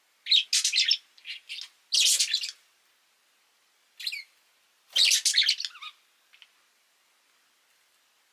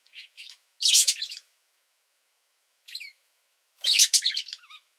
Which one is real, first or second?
first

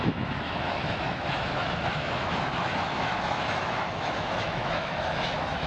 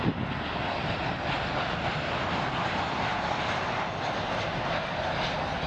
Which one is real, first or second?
second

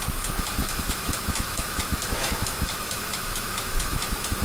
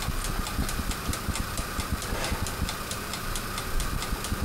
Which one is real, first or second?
second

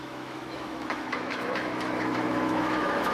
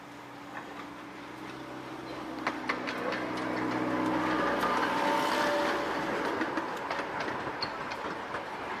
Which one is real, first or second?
second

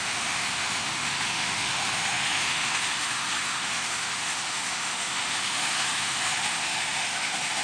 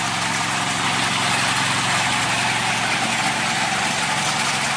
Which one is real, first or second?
second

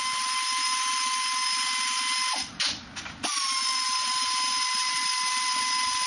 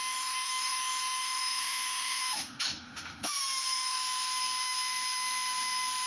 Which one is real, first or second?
first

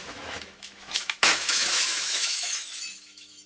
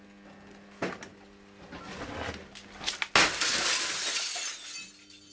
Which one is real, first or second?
second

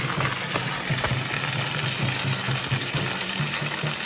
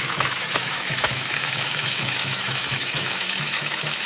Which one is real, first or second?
first